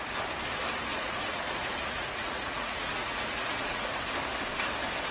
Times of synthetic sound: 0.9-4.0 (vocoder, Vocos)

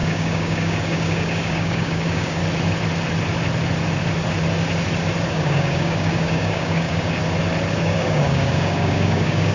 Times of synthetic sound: 0.0-2.4 (codec, DAC); 5.3-7.2; 7.8-9.5

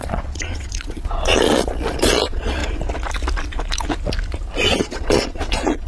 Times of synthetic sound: 0.0-2.6 (vocoder, Vocos); 4.8-5.9

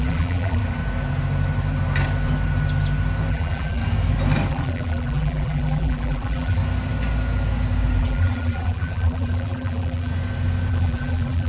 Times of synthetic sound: 0.0-0.6 (vocoder, BigVGAN v2); 3.3-3.8; 4.5-6.6; 8.0-10.1; 10.7-11.5

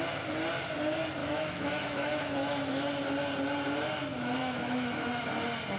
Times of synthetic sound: 1.2-2.9 (autoencoder, DAC-VAE); 4.1-5.2